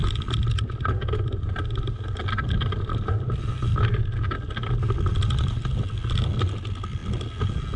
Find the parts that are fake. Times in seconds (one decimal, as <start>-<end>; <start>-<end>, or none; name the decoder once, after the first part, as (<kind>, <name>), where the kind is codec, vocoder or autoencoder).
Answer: none